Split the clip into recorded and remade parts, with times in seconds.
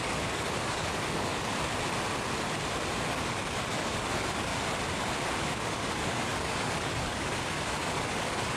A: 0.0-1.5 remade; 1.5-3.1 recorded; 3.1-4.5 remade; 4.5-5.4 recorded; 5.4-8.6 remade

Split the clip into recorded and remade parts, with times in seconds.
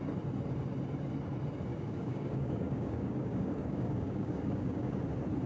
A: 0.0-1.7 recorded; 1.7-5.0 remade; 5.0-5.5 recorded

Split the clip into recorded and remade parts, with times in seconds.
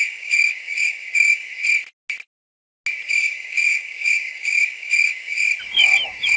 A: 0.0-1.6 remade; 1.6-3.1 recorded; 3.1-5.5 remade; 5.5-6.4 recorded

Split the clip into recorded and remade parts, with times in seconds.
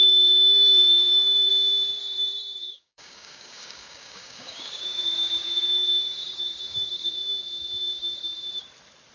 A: 0.0-1.5 remade; 1.5-2.0 recorded; 2.0-7.1 remade; 7.1-9.1 recorded